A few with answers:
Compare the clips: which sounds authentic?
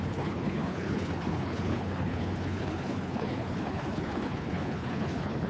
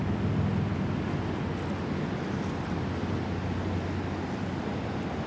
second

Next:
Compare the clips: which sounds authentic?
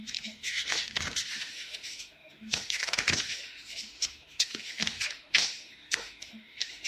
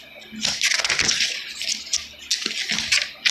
second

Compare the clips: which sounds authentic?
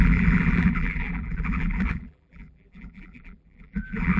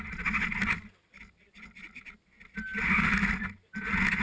second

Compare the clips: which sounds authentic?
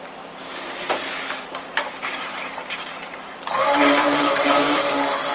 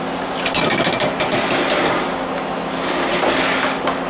second